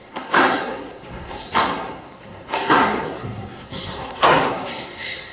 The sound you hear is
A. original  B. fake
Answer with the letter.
B